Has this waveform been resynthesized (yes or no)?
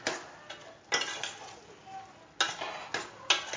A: no